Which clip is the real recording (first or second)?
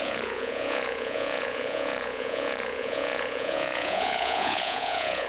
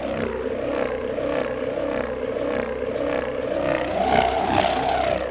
second